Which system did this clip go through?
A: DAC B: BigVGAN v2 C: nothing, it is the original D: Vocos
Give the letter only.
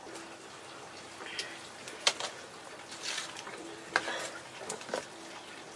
C